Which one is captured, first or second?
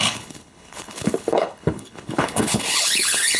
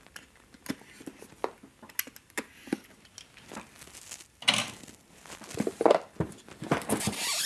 second